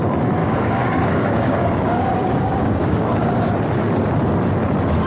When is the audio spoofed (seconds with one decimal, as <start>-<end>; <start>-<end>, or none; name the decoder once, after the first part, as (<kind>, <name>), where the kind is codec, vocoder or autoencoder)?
0.4-3.5 (codec, DAC)